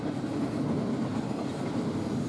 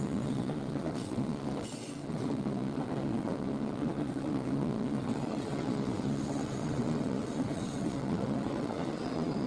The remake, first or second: second